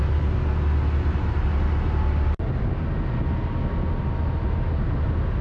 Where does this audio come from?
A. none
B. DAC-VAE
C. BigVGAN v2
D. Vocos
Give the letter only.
A